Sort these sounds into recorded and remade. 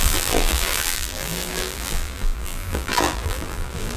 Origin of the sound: remade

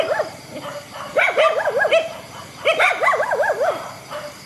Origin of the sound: remade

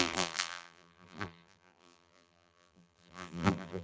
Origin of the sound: remade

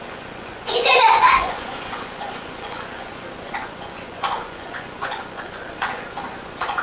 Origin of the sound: remade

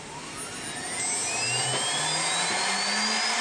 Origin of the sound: recorded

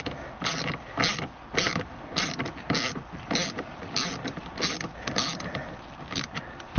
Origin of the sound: recorded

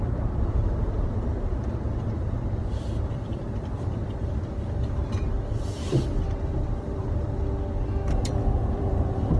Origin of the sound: remade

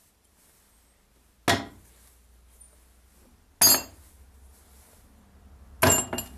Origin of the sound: recorded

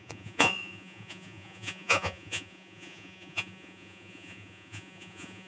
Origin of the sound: remade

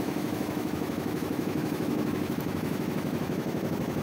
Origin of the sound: remade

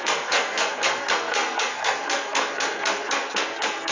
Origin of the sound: remade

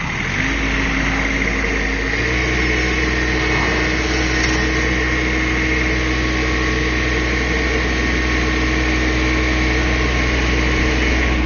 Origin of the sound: recorded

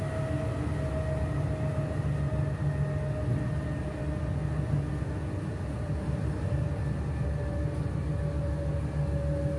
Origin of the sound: recorded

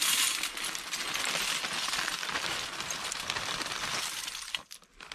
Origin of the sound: recorded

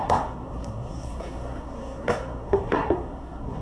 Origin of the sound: remade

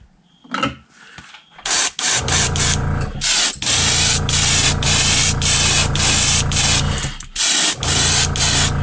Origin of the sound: recorded